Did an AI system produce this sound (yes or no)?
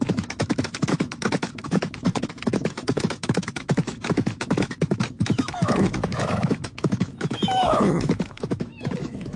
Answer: yes